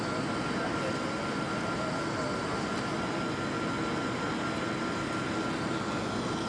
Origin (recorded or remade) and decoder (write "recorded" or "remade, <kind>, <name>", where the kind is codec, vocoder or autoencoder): recorded